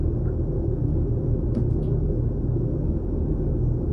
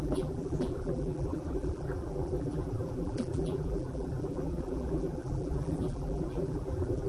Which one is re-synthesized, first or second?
second